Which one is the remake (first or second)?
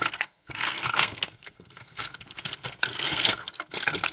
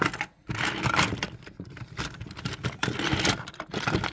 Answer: first